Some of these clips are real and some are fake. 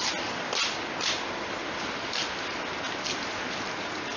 real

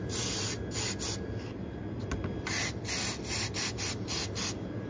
real